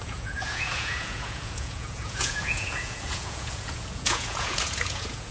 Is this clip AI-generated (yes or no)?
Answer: yes